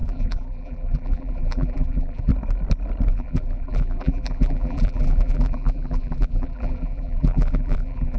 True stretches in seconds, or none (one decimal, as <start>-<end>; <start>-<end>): 2.3-3.1